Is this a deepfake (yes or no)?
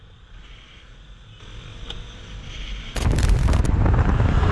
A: no